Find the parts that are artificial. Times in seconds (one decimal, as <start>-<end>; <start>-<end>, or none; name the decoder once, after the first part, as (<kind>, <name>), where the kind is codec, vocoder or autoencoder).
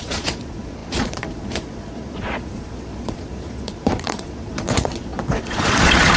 0.0-6.2 (vocoder, Vocos)